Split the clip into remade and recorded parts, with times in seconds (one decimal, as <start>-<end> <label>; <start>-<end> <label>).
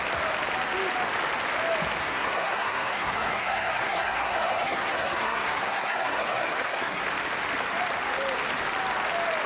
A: 0.0-2.0 recorded; 2.0-7.0 remade; 7.0-9.5 recorded